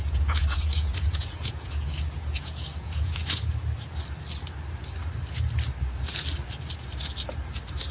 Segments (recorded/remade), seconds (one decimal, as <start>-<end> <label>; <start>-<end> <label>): 0.0-3.5 remade; 3.5-7.9 recorded